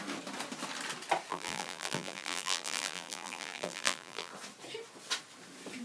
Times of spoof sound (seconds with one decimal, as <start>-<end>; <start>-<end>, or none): 1.3-4.3